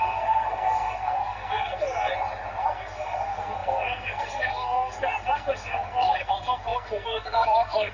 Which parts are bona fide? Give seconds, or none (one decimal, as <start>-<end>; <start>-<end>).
2.1-2.6